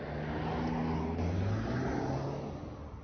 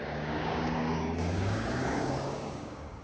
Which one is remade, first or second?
second